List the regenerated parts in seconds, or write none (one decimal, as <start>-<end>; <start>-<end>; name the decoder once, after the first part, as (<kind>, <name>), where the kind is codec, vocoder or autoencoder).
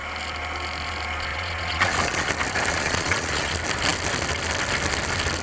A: 1.3-2.3 (vocoder, Vocos); 2.7-3.5